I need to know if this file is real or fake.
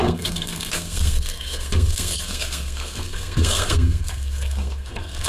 fake